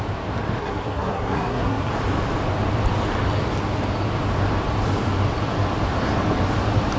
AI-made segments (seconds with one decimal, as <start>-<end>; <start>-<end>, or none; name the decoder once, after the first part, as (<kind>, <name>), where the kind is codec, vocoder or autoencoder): 0.6-1.9 (codec, SNAC)